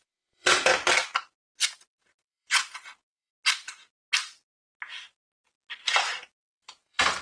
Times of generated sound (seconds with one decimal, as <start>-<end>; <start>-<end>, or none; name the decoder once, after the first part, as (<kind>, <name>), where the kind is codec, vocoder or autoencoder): 0.0-0.7 (vocoder, Vocos); 1.9-3.3; 6.4-7.2